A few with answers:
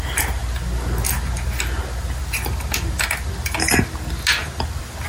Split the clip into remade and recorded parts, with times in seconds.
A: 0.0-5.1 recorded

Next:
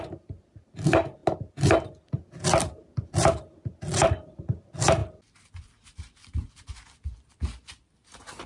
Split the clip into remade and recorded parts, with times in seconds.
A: 0.0-8.5 recorded

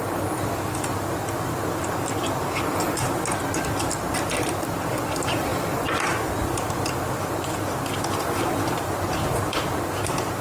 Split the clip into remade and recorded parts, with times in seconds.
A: 0.0-1.6 remade; 1.6-4.0 recorded; 4.0-10.4 remade

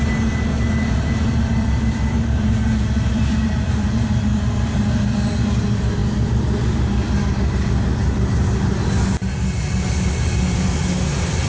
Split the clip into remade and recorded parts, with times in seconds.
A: 0.0-0.5 recorded; 0.5-3.9 remade; 3.9-11.5 recorded

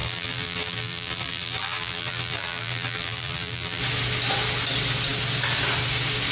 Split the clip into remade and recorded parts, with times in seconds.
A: 0.0-3.8 remade; 3.8-6.3 recorded